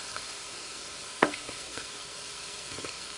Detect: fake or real fake